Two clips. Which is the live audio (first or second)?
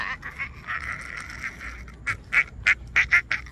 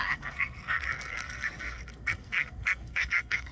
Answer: first